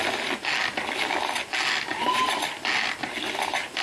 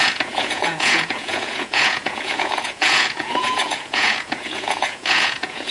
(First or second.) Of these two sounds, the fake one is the second